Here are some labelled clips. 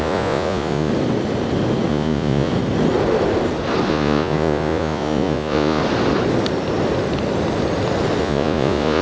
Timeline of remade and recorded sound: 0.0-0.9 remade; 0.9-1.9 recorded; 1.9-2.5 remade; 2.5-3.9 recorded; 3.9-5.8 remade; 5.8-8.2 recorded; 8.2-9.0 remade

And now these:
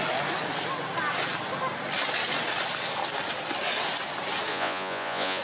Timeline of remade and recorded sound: 0.0-4.5 recorded; 4.5-5.4 remade

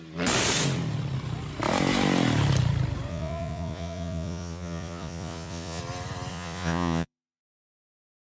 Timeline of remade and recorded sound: 0.0-3.1 recorded; 3.1-5.8 remade; 5.8-6.3 recorded; 6.3-7.4 remade; 7.4-8.4 recorded

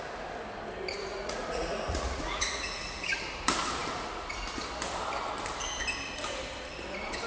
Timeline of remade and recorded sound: 0.0-1.1 recorded; 1.1-3.2 remade; 3.2-7.3 recorded

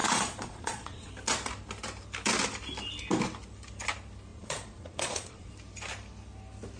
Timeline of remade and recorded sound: 0.0-1.1 remade; 1.1-4.3 recorded; 4.3-5.5 remade; 5.5-6.8 recorded

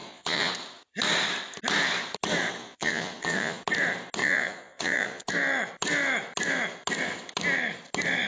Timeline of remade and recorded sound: 0.0-0.5 remade; 0.5-2.6 recorded; 2.6-3.6 remade; 3.6-4.2 recorded; 4.2-5.3 remade; 5.3-8.3 recorded

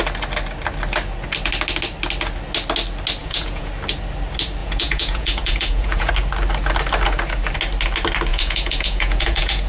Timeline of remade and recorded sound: 0.0-3.2 recorded; 3.2-3.7 remade; 3.7-4.6 recorded; 4.6-6.1 remade; 6.1-8.3 recorded; 8.3-9.7 remade

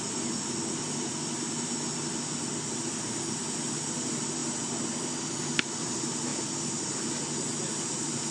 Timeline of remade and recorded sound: 0.0-8.3 recorded